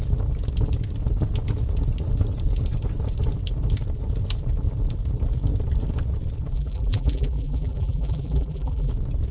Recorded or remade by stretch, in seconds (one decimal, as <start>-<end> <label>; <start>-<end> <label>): 0.0-6.5 recorded; 6.5-8.9 remade; 8.9-9.3 recorded